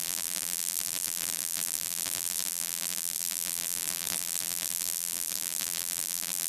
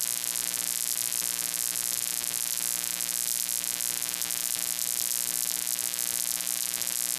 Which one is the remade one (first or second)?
first